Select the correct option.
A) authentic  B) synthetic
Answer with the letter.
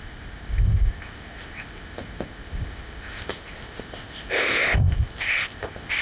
B